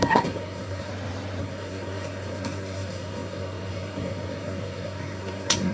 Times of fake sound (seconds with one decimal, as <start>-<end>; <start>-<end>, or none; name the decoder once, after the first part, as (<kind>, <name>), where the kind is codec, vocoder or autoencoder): 0.0-0.9 (codec, SNAC); 1.4-5.7